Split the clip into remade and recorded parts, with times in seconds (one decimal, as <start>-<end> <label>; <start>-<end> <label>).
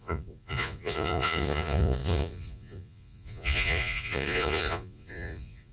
0.0-5.7 remade